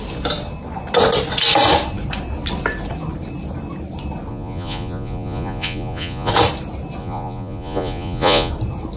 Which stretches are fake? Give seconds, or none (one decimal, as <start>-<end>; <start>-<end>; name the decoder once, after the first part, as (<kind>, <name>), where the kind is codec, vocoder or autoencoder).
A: 4.3-6.3 (vocoder, Vocos); 7.0-8.5